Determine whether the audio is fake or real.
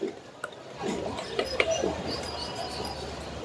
real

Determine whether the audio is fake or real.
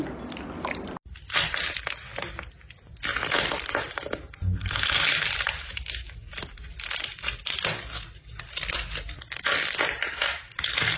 real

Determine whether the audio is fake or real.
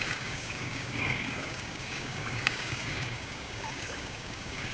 fake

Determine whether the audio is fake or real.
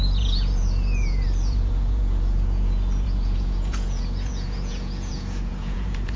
fake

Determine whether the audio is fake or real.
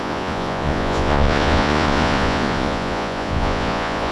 fake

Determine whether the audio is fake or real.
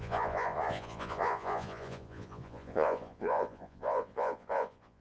fake